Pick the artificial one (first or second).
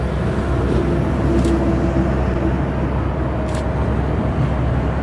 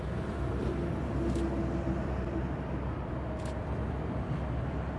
second